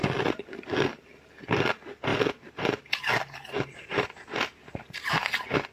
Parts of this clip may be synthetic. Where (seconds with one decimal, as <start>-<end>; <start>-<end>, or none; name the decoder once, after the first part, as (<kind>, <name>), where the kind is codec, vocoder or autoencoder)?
4.6-5.3 (vocoder, BigVGAN v2)